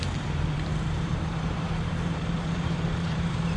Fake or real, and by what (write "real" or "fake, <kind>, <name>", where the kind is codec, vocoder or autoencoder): fake, vocoder, BigVGAN v2